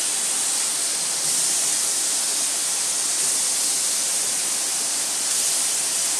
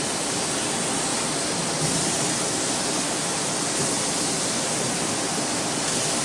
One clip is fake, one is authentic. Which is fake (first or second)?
first